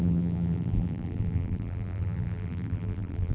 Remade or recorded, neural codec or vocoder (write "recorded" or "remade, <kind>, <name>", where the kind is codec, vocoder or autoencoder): remade, vocoder, BigVGAN v2